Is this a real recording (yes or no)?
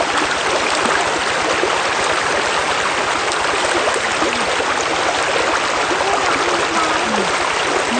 yes